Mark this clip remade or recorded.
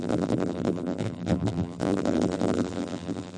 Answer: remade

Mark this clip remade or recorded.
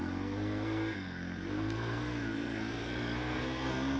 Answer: remade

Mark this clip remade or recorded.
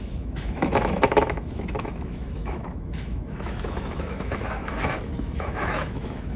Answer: remade